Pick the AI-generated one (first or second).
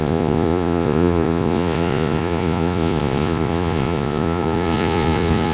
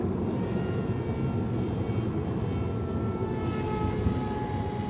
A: first